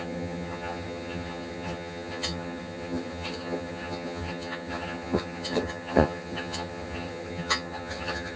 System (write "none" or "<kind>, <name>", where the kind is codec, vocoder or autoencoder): vocoder, HiFi-GAN